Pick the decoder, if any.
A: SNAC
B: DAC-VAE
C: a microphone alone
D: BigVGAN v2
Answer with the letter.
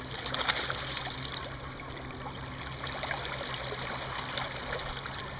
C